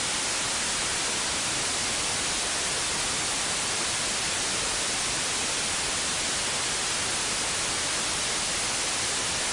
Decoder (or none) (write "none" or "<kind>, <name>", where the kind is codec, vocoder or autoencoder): none